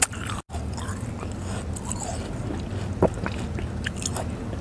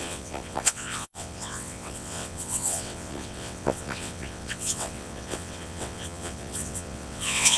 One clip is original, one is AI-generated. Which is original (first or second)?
first